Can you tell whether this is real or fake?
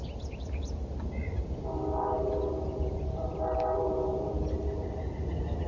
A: real